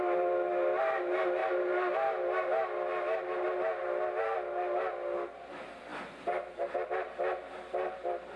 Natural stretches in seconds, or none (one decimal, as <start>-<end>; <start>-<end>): 1.4-5.5